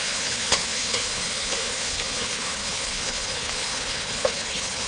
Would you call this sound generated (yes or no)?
yes